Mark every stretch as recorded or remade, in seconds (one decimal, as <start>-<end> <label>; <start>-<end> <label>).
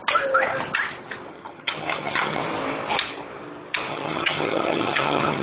0.0-1.3 recorded; 1.3-2.4 remade; 2.4-3.9 recorded; 3.9-5.4 remade